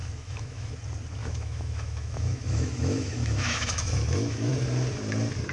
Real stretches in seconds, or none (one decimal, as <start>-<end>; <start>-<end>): 0.7-1.2; 4.5-5.5